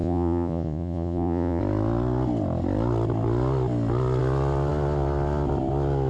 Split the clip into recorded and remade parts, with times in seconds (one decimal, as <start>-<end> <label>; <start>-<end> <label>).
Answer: 0.0-1.6 remade; 1.6-6.1 recorded